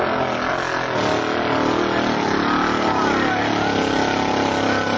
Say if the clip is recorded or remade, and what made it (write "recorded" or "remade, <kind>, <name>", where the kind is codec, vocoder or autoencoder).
recorded